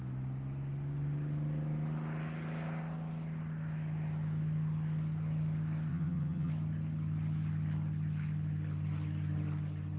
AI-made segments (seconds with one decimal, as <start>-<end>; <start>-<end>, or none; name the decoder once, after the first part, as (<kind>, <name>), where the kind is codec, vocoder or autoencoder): 5.9-6.5 (vocoder, HiFi-GAN)